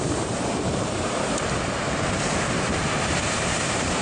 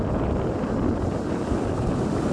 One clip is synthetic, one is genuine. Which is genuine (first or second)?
second